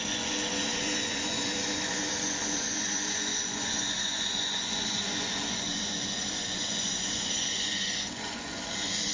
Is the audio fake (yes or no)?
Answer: yes